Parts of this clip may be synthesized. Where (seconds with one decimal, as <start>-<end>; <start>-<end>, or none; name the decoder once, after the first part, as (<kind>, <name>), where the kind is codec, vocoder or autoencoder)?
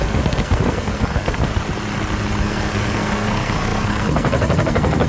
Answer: 0.0-1.5 (codec, SNAC); 2.4-5.1